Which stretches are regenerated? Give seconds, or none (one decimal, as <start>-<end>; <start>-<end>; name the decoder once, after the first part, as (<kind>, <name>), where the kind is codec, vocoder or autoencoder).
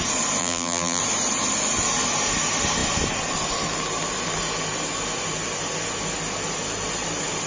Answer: 0.4-1.0 (vocoder, BigVGAN v2)